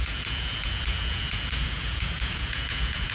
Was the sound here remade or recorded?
remade